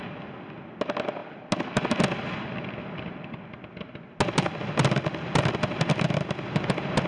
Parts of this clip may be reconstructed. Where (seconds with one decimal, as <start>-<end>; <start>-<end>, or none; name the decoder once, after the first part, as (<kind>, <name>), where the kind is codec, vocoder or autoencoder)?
none